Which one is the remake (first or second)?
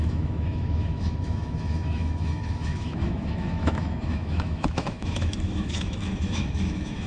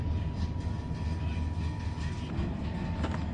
first